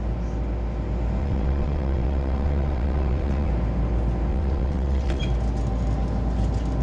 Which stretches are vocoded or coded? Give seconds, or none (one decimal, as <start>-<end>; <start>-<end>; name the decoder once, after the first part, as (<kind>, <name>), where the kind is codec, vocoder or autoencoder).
1.2-3.5 (vocoder, WaveNeXt); 4.3-5.2